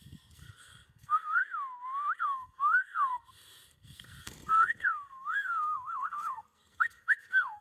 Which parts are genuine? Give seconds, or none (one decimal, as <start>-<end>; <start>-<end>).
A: 1.4-2.2

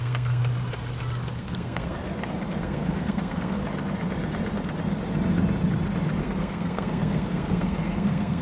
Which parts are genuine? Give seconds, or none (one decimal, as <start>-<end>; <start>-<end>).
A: 0.4-1.4; 2.0-2.6; 3.6-6.2

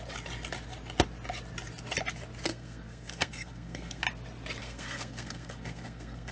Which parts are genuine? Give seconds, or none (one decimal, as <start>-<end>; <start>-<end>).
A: 0.0-2.5; 4.0-4.6

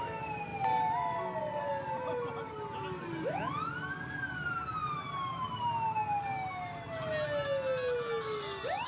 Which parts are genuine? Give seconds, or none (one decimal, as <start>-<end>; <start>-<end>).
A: 0.0-8.9

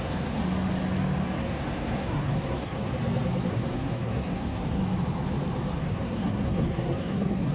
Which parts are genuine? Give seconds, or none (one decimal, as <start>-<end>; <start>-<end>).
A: 0.4-1.4; 2.9-3.5; 4.8-5.8

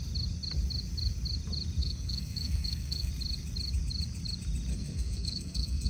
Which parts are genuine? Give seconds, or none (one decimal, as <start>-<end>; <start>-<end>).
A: 0.0-1.8; 3.1-4.7